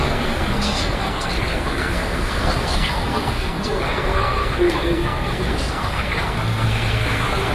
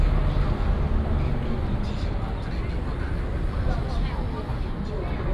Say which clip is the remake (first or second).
first